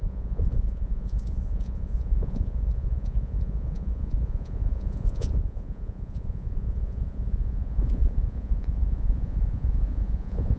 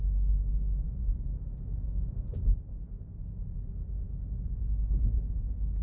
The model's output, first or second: first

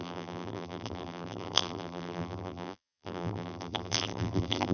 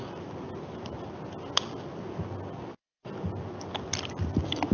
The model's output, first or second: first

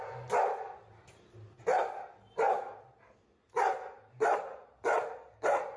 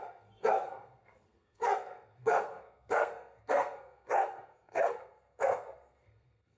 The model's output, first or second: second